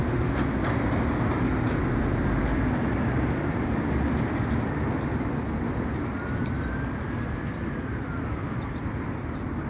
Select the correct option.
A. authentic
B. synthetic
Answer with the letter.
A